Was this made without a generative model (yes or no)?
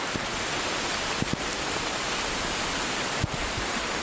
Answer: yes